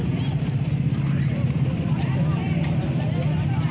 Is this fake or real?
real